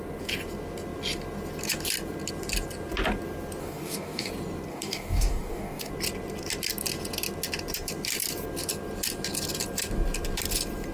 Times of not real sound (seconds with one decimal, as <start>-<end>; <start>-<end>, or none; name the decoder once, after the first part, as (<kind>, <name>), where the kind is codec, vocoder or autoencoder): 3.6-4.3 (codec, DAC); 4.7-5.9